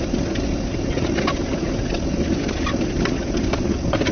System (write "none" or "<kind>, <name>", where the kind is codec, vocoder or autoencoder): none